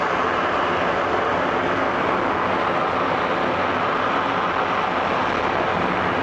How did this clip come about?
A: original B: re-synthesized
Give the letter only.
A